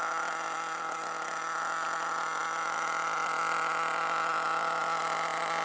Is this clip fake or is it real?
real